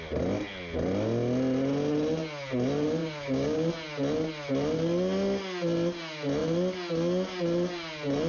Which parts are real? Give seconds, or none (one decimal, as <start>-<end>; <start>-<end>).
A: 0.0-3.0; 3.7-8.3